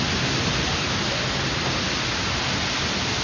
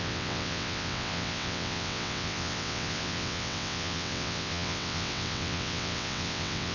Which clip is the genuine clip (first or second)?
first